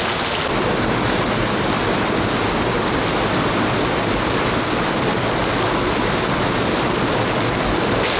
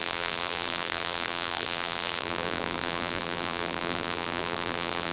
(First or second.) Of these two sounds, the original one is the first